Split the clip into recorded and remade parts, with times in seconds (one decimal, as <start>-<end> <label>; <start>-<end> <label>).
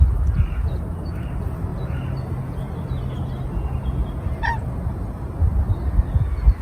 0.0-6.6 recorded